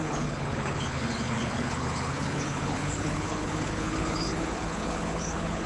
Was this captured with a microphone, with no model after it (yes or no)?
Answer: no